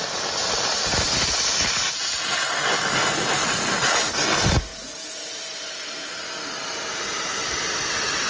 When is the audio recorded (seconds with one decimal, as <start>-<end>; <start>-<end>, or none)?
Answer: 0.0-4.7; 6.2-8.3